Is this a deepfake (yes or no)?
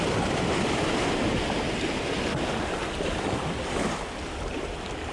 no